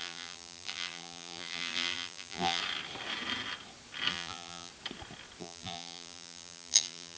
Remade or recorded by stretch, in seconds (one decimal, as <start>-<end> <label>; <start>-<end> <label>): 0.0-2.6 remade; 2.6-4.1 recorded; 4.1-4.7 remade; 4.7-5.4 recorded; 5.4-7.2 remade